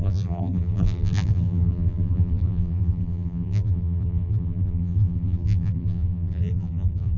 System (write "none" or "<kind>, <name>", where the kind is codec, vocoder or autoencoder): vocoder, BigVGAN v2